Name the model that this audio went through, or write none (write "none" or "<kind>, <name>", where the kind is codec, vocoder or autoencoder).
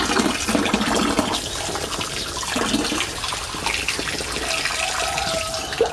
none